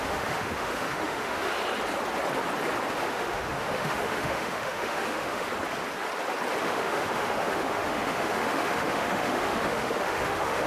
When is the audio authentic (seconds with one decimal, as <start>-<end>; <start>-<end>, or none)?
1.5-2.9; 5.5-6.6